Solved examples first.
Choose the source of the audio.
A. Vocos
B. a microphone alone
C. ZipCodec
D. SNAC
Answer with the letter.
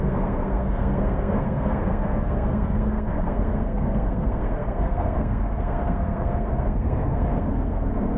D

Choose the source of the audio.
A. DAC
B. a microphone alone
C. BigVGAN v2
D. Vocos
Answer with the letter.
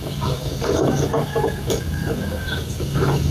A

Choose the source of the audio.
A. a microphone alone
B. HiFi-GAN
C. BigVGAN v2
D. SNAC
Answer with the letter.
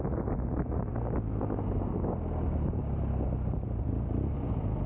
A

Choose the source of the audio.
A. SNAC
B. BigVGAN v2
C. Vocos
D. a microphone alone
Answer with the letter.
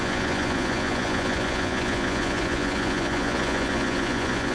C